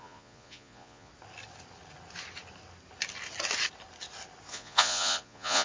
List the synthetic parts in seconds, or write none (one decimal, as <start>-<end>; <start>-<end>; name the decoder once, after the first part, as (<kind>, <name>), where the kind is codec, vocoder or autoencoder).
0.0-1.1 (vocoder, Vocos); 4.5-5.6